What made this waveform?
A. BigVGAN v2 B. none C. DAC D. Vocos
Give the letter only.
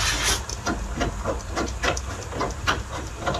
B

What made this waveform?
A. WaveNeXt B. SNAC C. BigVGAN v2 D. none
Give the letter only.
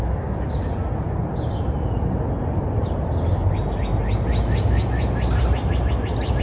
D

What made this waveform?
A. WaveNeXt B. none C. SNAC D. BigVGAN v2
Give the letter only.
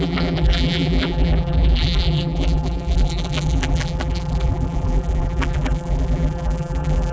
D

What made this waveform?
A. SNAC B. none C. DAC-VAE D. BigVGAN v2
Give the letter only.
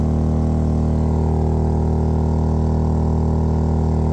B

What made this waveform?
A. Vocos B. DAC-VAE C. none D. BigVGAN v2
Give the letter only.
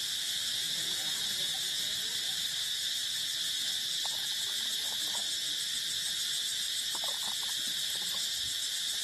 C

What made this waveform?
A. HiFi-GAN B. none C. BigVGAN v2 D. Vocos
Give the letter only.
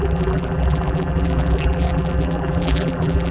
C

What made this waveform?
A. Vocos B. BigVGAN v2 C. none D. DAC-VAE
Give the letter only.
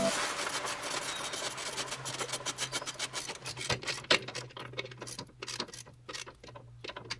C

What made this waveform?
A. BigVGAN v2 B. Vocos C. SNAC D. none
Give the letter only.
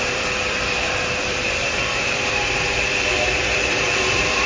A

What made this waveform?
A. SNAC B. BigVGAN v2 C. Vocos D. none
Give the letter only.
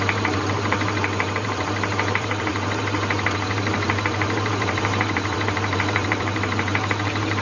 B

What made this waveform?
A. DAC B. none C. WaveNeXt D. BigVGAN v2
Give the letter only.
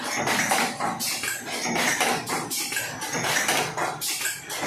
B